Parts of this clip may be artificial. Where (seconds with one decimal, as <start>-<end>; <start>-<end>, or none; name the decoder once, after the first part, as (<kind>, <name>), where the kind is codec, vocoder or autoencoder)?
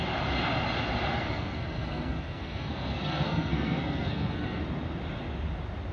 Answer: 1.1-4.6 (codec, SNAC)